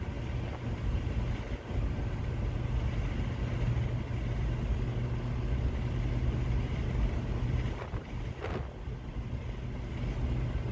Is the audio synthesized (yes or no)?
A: no